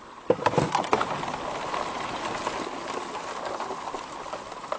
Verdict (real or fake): real